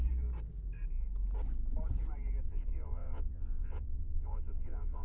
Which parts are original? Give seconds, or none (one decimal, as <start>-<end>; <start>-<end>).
0.0-2.4